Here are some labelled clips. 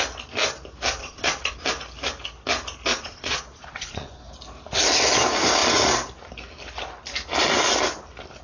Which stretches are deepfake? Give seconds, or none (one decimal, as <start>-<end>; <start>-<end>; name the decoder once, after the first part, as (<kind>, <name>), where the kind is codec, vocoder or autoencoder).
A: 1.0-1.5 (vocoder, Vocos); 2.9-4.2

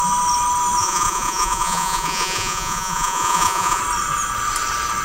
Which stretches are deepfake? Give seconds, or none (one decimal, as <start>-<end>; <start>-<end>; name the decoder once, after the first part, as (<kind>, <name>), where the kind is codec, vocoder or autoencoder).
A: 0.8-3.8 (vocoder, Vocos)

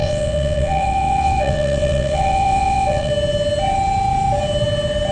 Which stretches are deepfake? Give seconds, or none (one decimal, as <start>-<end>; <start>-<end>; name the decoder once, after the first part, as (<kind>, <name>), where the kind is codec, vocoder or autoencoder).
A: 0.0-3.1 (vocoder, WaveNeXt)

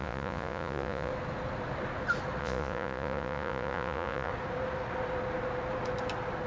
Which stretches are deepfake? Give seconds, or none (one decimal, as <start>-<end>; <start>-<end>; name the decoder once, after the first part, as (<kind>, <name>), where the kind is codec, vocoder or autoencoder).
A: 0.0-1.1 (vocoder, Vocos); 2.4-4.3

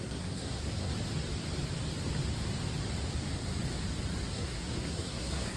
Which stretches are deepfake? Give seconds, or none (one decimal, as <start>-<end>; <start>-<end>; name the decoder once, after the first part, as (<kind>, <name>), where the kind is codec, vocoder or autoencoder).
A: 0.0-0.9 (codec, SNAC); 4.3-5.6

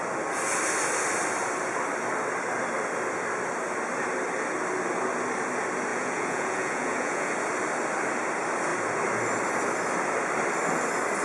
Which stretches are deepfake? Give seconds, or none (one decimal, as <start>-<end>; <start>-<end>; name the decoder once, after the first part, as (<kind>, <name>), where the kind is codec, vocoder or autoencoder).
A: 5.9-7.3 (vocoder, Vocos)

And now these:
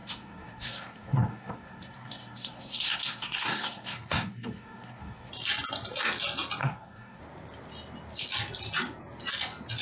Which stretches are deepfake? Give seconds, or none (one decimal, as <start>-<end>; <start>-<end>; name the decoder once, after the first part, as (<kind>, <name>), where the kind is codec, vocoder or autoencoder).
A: 0.0-5.3 (codec, SNAC); 6.6-7.2